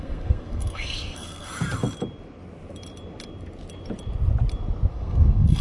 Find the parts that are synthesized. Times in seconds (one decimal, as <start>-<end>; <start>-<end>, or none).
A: 0.0-1.5; 4.9-5.6